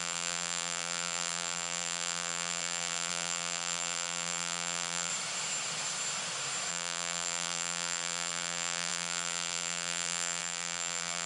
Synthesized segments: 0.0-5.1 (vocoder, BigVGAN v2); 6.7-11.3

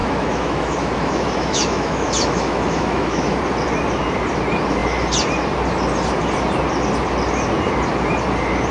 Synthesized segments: 0.0-3.4 (autoencoder, DAC-VAE)

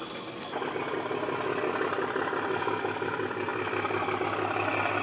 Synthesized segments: none

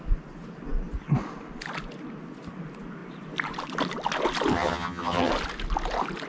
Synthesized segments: 4.5-5.3 (vocoder, HiFi-GAN)

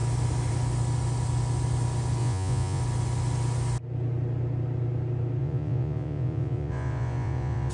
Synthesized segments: 2.2-2.8 (vocoder, Vocos); 5.4-7.7

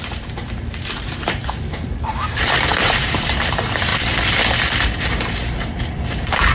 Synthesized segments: 0.0-3.9 (vocoder, BigVGAN v2); 4.8-6.5